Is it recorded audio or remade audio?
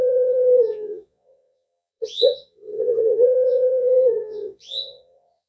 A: remade